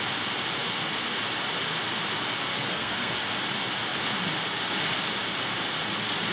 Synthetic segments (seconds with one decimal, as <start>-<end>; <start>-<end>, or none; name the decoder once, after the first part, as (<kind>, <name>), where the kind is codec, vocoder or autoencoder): 2.5-3.1 (codec, SNAC)

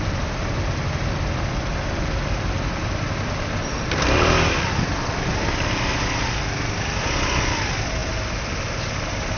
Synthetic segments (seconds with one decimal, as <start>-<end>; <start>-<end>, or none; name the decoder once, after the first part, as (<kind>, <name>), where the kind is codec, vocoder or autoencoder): none

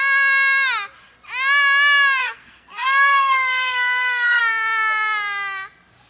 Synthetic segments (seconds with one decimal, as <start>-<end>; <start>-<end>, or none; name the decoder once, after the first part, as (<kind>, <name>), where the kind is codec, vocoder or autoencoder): 2.2-4.4 (codec, SNAC)

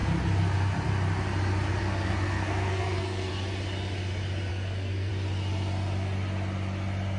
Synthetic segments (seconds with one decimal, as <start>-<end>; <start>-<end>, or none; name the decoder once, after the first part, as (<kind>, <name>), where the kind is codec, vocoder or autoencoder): 1.8-3.3 (codec, SNAC); 4.5-5.1